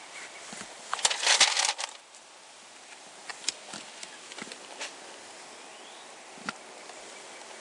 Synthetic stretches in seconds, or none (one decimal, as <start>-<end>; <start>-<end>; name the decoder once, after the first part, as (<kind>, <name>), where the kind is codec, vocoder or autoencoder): none